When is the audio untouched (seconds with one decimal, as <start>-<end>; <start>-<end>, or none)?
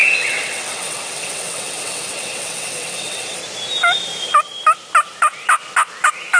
3.4-6.4